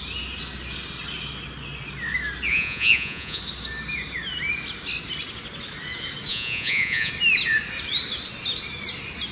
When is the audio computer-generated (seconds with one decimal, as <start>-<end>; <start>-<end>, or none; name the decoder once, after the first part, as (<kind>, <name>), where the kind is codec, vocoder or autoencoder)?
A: 2.5-3.4 (vocoder, Vocos); 6.3-7.1